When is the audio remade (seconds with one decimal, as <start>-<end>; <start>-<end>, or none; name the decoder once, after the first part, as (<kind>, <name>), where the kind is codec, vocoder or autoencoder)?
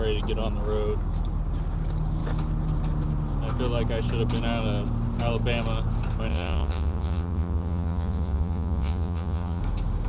6.3-9.6 (vocoder, Vocos)